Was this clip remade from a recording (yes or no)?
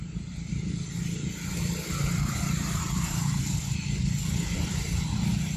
yes